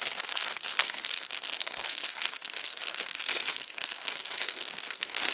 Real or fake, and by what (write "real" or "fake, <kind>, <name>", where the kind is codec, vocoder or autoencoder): fake, codec, SNAC